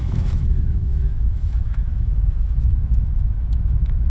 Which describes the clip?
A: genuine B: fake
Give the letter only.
B